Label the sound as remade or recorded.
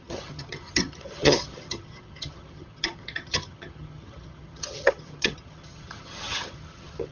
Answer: remade